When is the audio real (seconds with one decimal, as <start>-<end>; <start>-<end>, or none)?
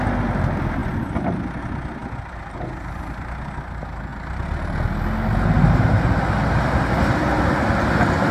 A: 0.0-2.0; 3.5-8.3